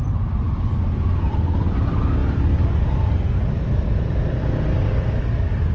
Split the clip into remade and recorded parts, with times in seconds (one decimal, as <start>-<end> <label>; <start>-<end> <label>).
0.0-5.7 recorded